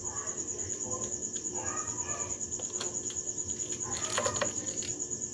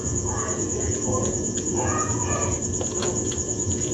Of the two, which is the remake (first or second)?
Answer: second